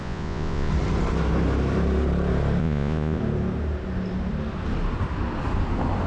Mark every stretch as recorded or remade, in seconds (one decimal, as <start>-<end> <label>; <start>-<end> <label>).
0.0-0.7 remade; 0.7-2.6 recorded; 2.6-3.2 remade; 3.2-6.1 recorded